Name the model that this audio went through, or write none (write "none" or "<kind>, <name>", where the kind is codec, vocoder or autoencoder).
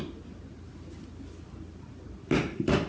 none